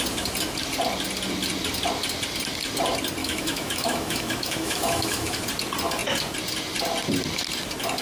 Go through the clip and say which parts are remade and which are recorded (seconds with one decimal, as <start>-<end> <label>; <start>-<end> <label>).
0.0-3.2 recorded; 3.2-5.4 remade; 5.4-8.0 recorded